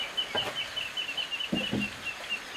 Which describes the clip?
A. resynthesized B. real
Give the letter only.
B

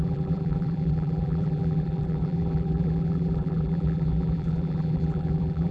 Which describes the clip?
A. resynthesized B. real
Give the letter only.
A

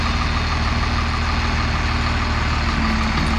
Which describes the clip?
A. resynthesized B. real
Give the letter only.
B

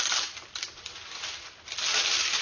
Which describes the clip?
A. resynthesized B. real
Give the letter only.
B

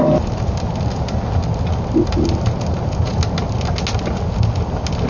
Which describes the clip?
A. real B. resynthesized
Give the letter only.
A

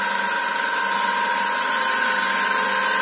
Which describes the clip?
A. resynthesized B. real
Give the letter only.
B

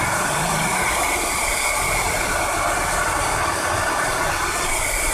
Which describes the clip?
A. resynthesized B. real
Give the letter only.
A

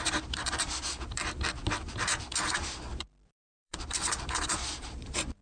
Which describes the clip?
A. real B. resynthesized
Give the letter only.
B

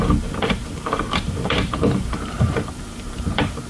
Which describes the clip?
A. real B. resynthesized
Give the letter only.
B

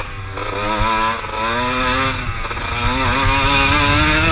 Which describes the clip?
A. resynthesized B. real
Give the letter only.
B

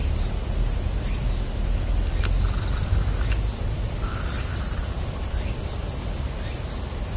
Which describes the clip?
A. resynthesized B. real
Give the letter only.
A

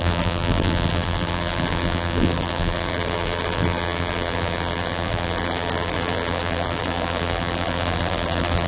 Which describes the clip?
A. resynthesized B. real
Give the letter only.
A